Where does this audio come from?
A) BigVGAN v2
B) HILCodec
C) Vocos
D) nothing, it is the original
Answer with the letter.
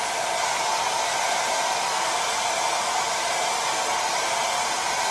D